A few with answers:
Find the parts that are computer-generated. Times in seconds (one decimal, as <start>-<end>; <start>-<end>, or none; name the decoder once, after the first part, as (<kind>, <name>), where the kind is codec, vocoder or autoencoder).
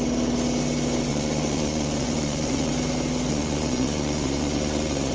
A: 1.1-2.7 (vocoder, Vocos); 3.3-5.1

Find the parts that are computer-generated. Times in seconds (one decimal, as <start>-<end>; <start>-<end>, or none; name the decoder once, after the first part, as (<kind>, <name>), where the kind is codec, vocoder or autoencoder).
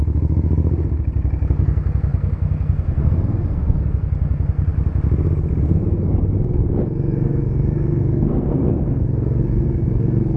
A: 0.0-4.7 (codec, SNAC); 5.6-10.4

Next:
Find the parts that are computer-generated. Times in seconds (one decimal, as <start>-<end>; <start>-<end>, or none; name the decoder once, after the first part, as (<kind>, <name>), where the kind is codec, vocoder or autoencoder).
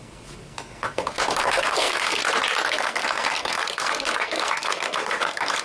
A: 0.0-2.2 (codec, SNAC); 2.7-5.6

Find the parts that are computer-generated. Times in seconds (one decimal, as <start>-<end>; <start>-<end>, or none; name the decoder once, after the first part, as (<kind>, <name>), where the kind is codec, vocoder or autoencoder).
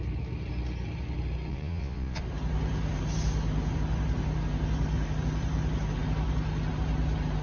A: 1.5-2.2 (vocoder, Vocos)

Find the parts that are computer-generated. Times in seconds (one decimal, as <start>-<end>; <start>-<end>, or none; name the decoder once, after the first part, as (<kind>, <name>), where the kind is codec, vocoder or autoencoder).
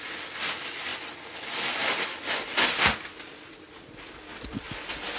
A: none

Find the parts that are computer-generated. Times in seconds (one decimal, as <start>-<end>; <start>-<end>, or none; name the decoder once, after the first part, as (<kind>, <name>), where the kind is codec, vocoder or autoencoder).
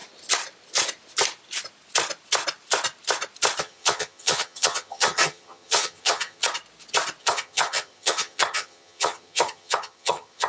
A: 3.6-6.4 (vocoder, HiFi-GAN); 7.2-10.5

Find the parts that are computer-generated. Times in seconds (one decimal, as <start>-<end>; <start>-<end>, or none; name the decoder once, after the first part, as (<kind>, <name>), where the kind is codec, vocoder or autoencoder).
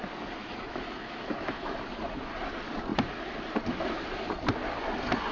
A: 0.4-1.8 (autoencoder, DAC-VAE)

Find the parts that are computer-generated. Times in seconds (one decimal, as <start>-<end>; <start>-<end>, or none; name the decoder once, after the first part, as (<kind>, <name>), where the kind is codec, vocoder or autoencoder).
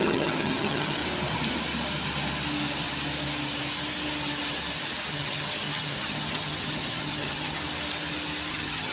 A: 0.0-1.0 (vocoder, HiFi-GAN); 5.1-7.6; 8.5-8.9